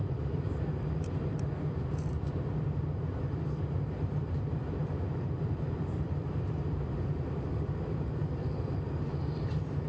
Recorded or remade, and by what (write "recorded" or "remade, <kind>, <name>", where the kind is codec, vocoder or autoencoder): remade, vocoder, BigVGAN v2